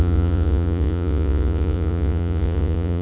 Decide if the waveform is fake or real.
fake